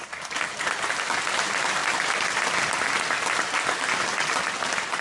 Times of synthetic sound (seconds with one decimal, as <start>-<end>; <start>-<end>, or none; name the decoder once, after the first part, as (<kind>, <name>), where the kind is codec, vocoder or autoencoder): none